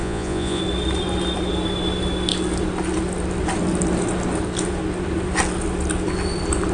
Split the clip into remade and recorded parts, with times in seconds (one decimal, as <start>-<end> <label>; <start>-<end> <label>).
0.0-0.6 remade; 0.6-6.7 recorded